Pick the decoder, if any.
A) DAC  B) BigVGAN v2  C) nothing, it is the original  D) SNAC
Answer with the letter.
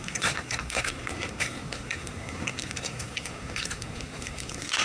D